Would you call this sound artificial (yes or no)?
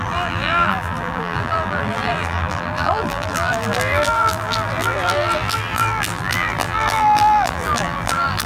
yes